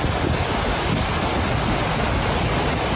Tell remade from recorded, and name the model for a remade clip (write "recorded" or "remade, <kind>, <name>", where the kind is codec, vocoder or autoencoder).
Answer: recorded